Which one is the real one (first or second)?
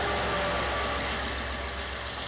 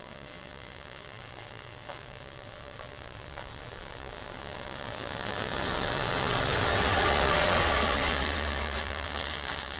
first